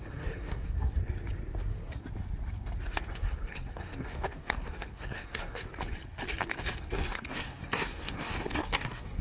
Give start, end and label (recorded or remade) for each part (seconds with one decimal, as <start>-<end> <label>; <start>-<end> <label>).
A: 0.0-1.0 remade; 1.0-1.6 recorded; 1.6-2.0 remade; 2.0-3.1 recorded; 3.1-5.6 remade; 5.6-6.8 recorded; 6.8-9.2 remade